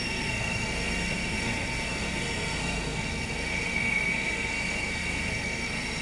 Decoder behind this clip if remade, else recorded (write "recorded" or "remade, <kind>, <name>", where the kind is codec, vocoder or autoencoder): remade, codec, SNAC